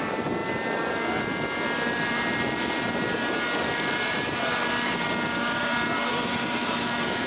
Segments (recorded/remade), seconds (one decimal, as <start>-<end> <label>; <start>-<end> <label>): 0.0-7.3 recorded